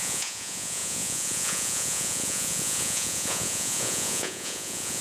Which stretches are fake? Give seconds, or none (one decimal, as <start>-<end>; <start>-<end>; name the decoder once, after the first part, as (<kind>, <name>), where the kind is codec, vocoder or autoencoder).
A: 0.0-5.0 (vocoder, Vocos)